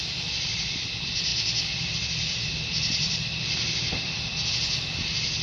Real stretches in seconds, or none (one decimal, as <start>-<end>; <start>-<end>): 0.0-5.4

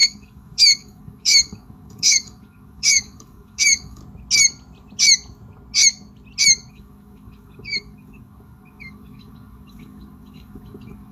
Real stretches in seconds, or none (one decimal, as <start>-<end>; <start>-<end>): 4.0-6.7

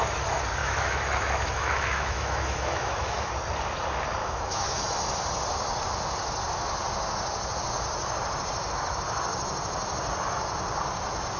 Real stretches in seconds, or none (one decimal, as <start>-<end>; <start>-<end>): 0.0-0.6; 3.3-4.2; 4.8-11.4

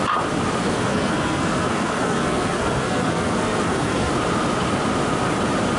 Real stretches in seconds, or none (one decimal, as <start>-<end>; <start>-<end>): 0.0-0.6; 4.1-5.8

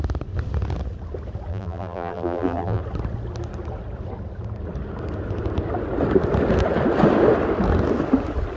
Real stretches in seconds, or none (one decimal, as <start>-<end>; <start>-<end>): 0.0-1.5; 2.8-8.6

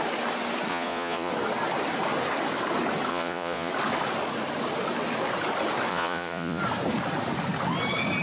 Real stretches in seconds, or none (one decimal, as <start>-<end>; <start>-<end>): 0.0-0.7; 1.3-3.1; 3.7-5.9; 6.6-8.2

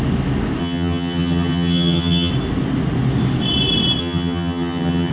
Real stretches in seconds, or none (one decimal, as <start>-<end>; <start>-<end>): 0.0-0.6; 2.3-4.0